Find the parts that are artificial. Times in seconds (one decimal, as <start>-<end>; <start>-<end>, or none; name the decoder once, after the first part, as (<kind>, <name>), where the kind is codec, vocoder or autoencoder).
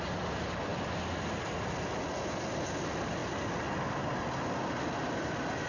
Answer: none